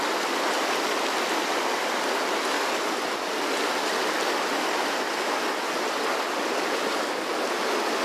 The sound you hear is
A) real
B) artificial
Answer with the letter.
B